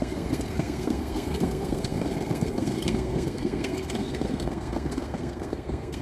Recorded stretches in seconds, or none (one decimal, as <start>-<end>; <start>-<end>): none